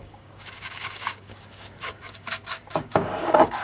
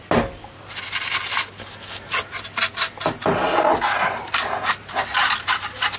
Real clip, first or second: second